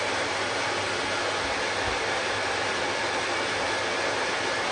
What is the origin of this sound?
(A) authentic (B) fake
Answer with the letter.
A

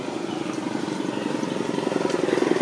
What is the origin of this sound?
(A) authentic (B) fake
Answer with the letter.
A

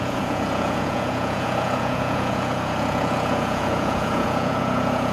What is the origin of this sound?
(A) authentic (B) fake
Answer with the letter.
B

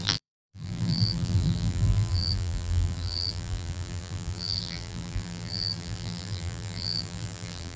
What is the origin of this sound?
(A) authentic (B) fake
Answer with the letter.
B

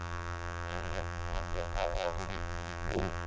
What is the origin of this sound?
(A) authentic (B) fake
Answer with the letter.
B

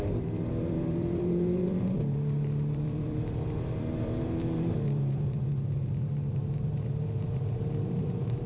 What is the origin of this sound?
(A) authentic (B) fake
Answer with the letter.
B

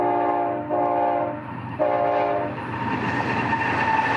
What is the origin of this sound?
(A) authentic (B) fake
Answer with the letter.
A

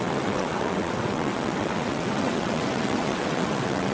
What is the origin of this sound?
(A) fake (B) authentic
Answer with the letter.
A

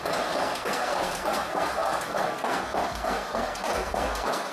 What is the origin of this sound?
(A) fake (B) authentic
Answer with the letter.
A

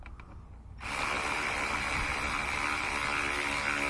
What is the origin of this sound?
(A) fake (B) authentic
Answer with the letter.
B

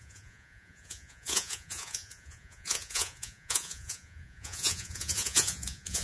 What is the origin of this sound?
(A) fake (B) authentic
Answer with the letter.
A